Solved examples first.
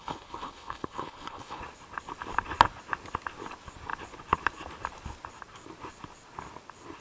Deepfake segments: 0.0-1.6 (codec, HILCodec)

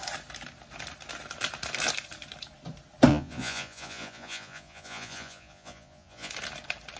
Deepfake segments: 3.1-6.3 (vocoder, Vocos)

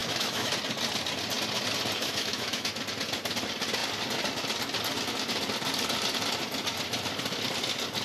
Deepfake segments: 0.0-0.5 (autoencoder, DAC-VAE); 2.0-2.7